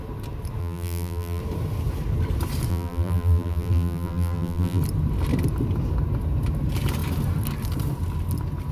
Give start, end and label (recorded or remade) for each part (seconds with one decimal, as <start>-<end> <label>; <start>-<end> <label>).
0.0-0.6 recorded; 0.6-1.4 remade; 1.4-2.7 recorded; 2.7-4.8 remade; 4.8-8.7 recorded